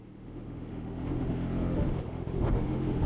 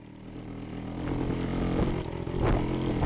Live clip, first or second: second